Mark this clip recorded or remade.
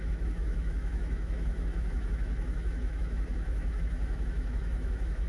remade